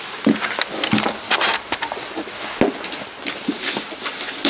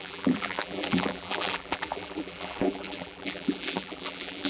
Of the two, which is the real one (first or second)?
first